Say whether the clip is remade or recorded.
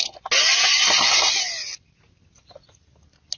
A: recorded